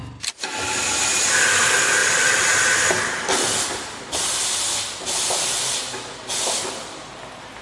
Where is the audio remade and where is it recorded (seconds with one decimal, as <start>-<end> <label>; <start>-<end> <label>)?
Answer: 0.0-7.6 recorded